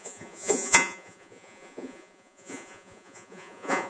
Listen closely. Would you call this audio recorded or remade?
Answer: remade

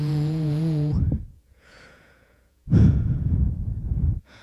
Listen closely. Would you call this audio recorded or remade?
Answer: remade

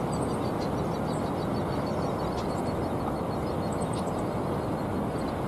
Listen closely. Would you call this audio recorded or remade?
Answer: recorded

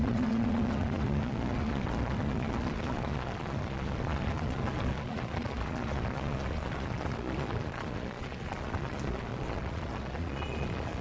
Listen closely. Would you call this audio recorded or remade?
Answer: remade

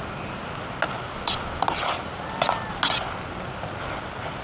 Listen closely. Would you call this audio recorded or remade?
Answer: recorded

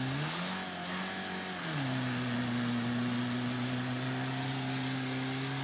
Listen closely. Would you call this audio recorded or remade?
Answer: recorded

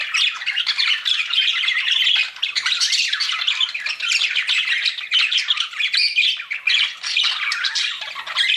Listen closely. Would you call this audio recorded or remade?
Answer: recorded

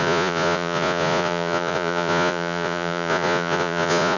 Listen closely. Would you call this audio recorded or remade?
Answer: remade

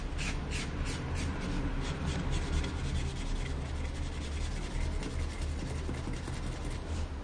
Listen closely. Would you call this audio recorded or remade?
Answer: recorded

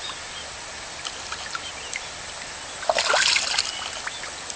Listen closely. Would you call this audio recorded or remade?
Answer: recorded